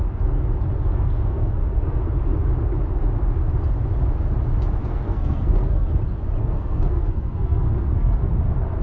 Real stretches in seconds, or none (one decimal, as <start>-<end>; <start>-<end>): 0.0-0.9; 2.0-4.8; 5.9-6.4; 8.3-8.8